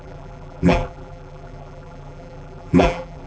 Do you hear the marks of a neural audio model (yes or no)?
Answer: yes